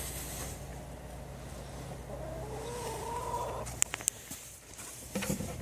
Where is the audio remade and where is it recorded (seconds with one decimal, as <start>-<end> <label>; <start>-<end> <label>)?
0.0-0.7 remade; 0.7-4.1 recorded; 4.1-5.6 remade